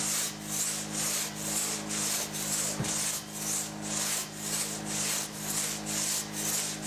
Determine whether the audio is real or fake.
real